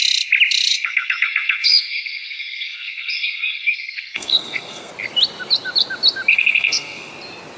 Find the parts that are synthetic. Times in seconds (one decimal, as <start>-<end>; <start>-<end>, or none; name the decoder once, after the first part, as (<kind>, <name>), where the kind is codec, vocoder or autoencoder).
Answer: 0.7-4.9 (codec, SNAC); 6.3-7.1